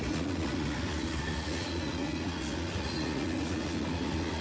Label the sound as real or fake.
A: fake